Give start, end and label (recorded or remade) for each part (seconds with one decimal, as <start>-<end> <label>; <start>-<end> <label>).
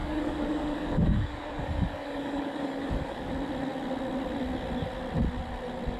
0.0-3.3 remade; 3.3-6.0 recorded